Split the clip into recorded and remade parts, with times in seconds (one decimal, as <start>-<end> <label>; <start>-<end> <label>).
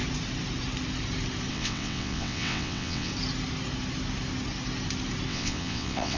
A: 0.0-1.5 recorded; 1.5-3.1 remade; 3.1-5.3 recorded; 5.3-6.2 remade